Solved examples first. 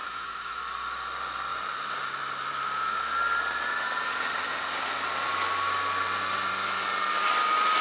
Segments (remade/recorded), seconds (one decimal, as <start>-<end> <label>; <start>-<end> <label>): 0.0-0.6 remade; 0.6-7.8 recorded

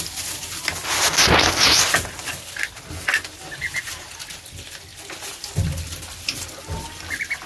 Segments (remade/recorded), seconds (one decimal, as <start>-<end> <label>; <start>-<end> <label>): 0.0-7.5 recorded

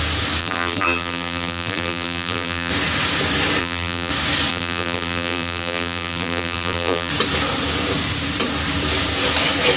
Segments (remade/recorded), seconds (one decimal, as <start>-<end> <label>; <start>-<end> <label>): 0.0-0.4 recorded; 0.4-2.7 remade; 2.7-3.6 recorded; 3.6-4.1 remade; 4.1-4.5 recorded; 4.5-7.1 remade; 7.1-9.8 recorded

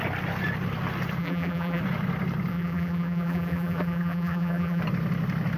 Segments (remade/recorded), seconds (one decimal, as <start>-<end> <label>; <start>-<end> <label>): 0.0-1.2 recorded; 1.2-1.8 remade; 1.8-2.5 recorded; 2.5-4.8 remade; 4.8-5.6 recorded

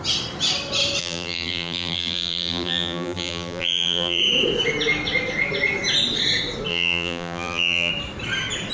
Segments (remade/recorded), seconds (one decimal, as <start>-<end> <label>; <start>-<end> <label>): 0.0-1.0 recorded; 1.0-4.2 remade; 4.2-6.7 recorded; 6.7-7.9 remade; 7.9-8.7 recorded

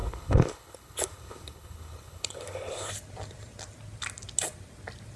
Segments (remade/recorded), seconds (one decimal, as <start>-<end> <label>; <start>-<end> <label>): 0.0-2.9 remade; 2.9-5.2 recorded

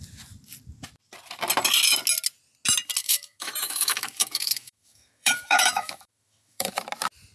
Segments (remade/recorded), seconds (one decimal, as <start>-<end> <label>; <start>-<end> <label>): 0.0-3.0 recorded; 3.0-6.7 remade; 6.7-7.3 recorded

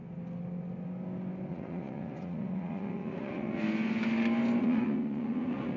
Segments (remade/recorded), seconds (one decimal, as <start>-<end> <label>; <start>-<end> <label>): 0.0-1.5 recorded; 1.5-3.6 remade; 3.6-4.6 recorded; 4.6-5.8 remade